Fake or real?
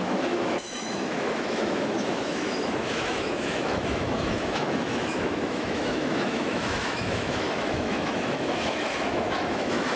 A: fake